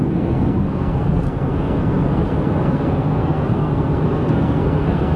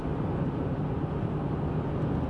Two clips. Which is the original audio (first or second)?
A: second